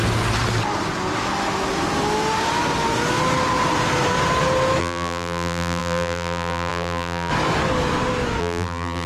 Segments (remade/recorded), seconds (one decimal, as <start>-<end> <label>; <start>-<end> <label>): 0.0-4.8 recorded; 4.8-7.3 remade; 7.3-8.4 recorded; 8.4-9.1 remade